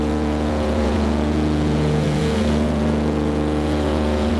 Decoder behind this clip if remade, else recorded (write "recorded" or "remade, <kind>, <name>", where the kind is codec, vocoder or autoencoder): remade, vocoder, Vocos